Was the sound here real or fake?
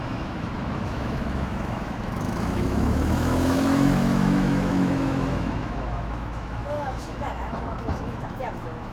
fake